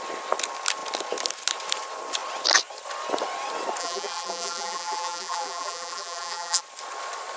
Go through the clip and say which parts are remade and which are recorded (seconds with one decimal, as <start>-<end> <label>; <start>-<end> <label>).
0.0-3.8 recorded; 3.8-6.6 remade; 6.6-7.4 recorded